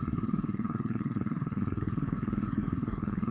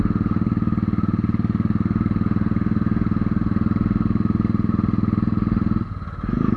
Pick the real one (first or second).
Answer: second